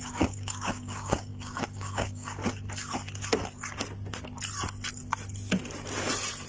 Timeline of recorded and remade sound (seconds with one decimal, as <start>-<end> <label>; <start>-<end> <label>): 0.0-2.4 remade; 2.4-6.5 recorded